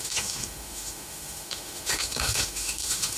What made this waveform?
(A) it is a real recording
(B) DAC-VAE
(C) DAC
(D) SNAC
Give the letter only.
B